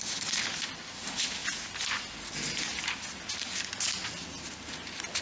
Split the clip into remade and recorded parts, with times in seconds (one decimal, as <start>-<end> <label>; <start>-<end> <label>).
0.0-0.7 recorded; 0.7-1.4 remade; 1.4-4.0 recorded; 4.0-5.2 remade

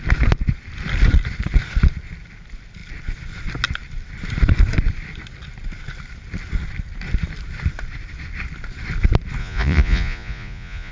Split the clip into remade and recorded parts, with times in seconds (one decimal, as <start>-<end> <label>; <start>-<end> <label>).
0.0-9.4 recorded; 9.4-10.9 remade

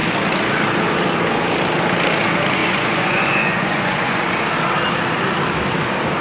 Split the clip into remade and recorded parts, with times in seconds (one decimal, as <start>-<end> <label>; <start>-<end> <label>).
0.0-2.6 recorded; 2.6-4.2 remade; 4.2-6.2 recorded

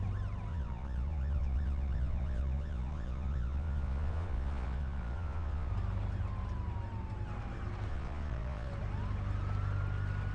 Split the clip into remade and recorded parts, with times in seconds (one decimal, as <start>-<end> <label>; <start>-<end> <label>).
0.0-0.5 recorded; 0.5-5.7 remade; 5.7-7.9 recorded; 7.9-8.7 remade; 8.7-10.3 recorded

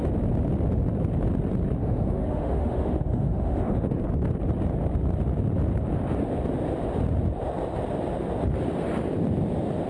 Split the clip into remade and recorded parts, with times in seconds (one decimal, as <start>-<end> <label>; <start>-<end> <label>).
0.0-1.8 recorded; 1.8-4.0 remade; 4.0-9.9 recorded

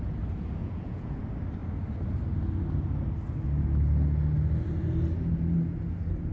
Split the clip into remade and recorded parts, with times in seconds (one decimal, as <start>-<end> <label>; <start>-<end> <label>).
0.0-0.6 recorded; 0.6-1.2 remade; 1.2-6.3 recorded

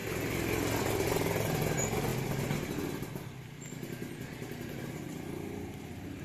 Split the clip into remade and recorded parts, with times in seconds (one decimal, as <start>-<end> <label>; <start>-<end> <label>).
0.0-6.2 recorded